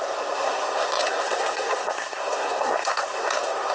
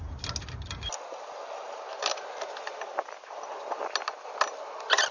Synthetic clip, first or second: first